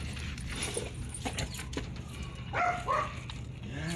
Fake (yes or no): no